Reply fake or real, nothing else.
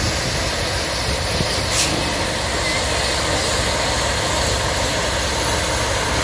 real